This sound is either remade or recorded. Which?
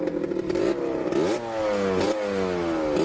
recorded